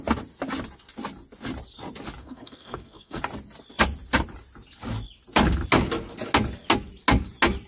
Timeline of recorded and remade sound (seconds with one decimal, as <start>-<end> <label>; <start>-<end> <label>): 0.0-2.2 recorded; 2.2-3.2 remade; 3.2-7.7 recorded